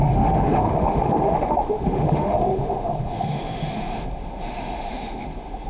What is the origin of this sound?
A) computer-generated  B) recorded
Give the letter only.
A